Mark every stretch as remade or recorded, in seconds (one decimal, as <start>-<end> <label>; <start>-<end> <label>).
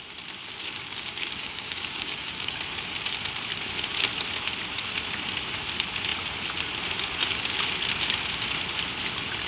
0.0-0.4 recorded; 0.4-2.6 remade; 2.6-9.5 recorded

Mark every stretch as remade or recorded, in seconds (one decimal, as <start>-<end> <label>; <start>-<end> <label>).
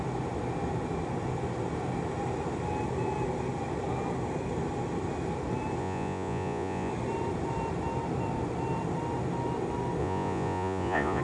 0.0-5.8 recorded; 5.8-6.9 remade; 6.9-10.0 recorded; 10.0-11.2 remade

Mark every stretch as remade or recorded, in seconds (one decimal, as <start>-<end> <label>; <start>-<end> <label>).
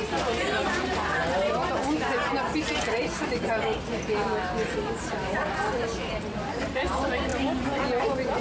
0.0-8.4 recorded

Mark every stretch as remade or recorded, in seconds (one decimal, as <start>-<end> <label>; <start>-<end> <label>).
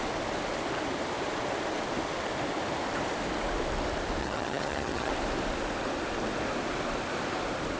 0.0-4.2 recorded; 4.2-5.1 remade; 5.1-7.8 recorded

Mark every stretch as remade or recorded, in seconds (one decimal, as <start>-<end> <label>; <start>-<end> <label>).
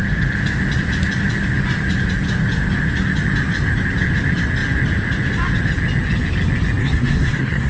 0.0-6.8 recorded; 6.8-7.7 remade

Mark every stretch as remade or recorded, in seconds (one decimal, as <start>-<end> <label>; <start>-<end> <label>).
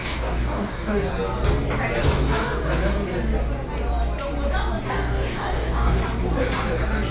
0.0-1.1 remade; 1.1-2.0 recorded; 2.0-2.6 remade; 2.6-4.9 recorded; 4.9-6.0 remade; 6.0-7.1 recorded